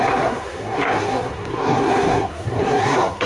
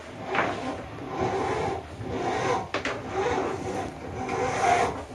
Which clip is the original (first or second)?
second